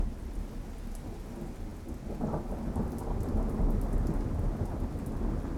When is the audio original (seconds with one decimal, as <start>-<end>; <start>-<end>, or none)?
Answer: 0.0-5.6